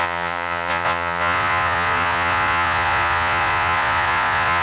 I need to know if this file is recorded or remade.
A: remade